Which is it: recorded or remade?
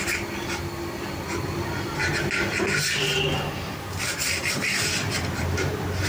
remade